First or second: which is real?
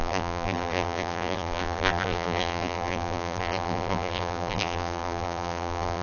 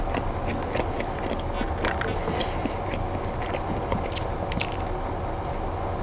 second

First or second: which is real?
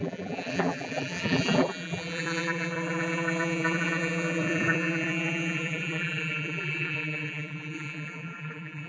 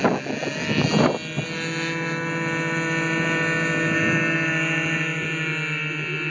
second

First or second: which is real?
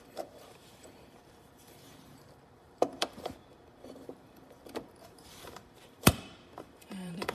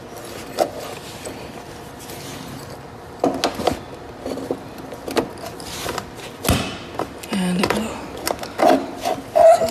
second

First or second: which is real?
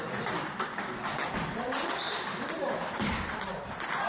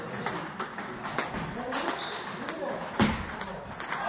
second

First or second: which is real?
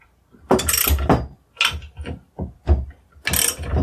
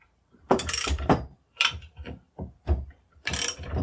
first